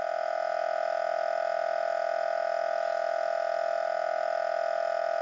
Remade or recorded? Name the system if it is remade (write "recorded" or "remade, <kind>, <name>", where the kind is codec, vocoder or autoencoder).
recorded